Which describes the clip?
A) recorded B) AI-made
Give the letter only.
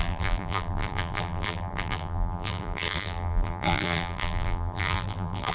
B